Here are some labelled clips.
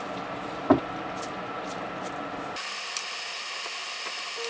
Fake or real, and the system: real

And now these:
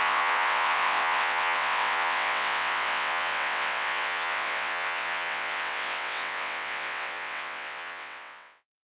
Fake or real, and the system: fake, vocoder, WaveNeXt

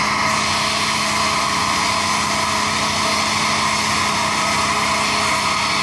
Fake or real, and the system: real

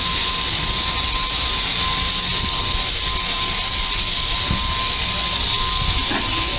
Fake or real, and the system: real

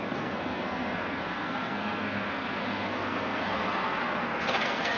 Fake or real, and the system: fake, codec, SNAC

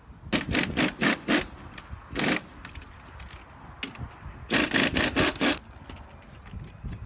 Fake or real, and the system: real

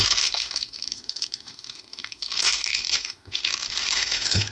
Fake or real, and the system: fake, autoencoder, DAC-VAE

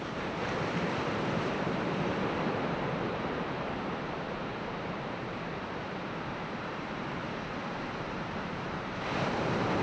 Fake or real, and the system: fake, vocoder, BigVGAN v2